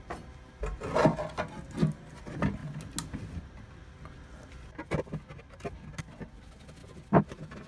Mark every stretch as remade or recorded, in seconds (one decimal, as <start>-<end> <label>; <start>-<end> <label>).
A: 0.0-7.7 recorded